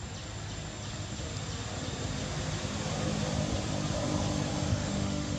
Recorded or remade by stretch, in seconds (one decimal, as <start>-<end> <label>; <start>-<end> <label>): 0.0-4.7 recorded; 4.7-5.4 remade